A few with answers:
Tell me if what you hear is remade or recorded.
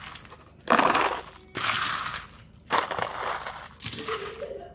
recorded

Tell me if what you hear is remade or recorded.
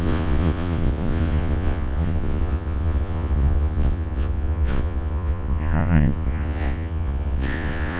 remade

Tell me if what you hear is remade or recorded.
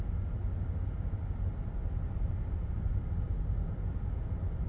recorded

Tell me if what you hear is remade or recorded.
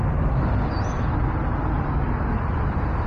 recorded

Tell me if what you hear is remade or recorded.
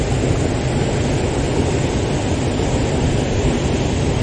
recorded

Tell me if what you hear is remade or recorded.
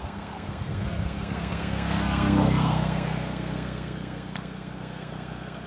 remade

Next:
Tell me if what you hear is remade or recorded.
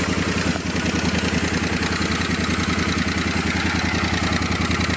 recorded